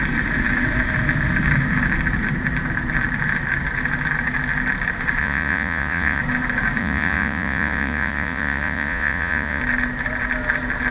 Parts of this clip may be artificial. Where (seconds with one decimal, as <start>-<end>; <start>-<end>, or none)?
5.2-6.2; 6.8-9.6